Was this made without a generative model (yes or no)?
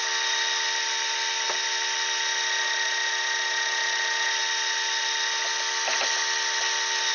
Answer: yes